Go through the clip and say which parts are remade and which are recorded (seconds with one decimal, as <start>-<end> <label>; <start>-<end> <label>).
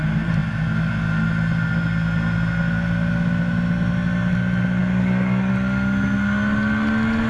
0.0-4.8 recorded; 4.8-5.5 remade; 5.5-7.3 recorded